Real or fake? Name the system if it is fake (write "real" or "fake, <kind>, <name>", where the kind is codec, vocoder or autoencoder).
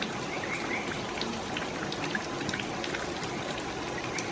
real